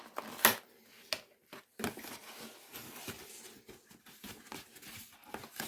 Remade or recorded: recorded